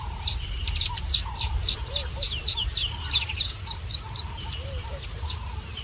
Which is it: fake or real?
fake